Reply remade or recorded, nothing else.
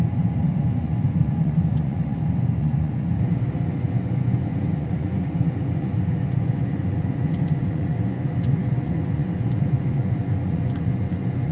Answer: remade